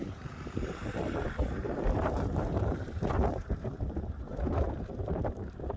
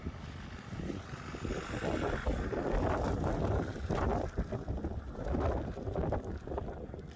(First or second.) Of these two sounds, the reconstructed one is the first